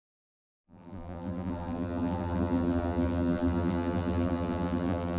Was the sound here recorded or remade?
remade